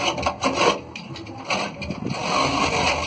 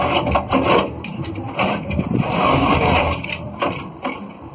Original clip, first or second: first